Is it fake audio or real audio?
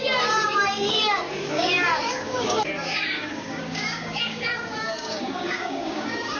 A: fake